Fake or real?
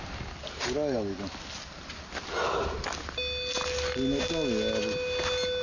real